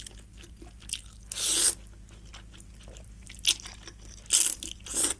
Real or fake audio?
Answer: real